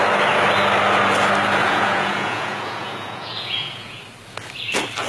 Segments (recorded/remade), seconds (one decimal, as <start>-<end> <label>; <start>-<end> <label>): 0.0-1.6 recorded; 1.6-4.0 remade; 4.0-5.1 recorded